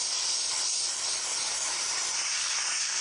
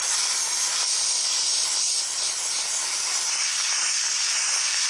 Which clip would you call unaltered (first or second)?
second